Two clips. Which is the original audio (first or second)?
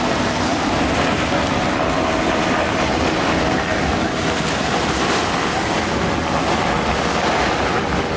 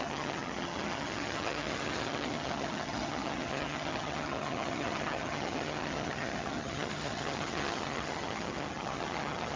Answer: first